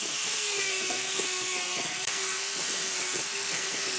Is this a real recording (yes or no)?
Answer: no